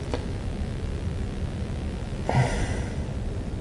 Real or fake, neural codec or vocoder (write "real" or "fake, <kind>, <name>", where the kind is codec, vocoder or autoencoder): real